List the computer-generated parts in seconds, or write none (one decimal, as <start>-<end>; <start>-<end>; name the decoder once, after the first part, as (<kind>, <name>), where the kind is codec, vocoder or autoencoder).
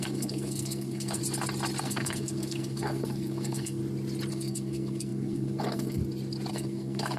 0.0-1.2 (codec, SNAC); 1.8-3.8; 4.3-6.0; 6.5-7.2